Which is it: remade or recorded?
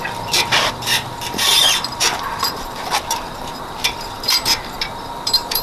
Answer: remade